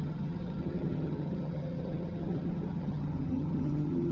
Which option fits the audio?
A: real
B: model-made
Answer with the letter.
B